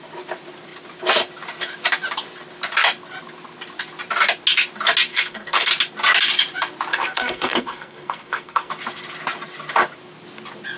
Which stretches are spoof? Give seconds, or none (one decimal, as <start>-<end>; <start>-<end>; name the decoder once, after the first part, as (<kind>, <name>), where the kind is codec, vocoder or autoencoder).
5.1-5.7 (codec, SNAC); 6.9-8.7